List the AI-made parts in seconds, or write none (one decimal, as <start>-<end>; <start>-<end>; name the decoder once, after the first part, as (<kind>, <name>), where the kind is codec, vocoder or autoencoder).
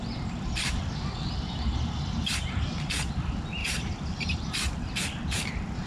3.6-4.5 (vocoder, BigVGAN v2)